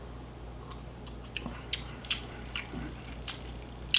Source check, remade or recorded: recorded